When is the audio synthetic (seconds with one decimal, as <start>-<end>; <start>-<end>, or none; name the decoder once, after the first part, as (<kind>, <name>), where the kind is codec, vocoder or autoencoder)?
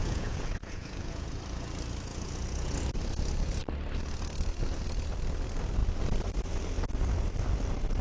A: 0.0-1.4 (vocoder, Vocos); 2.1-2.8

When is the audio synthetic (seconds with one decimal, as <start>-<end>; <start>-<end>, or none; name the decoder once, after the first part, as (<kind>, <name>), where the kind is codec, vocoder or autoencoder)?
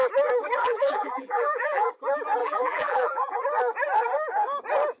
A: 0.6-1.9 (vocoder, BigVGAN v2); 2.4-3.4